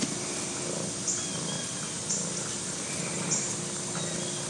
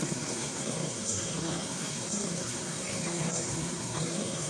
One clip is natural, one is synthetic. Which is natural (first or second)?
first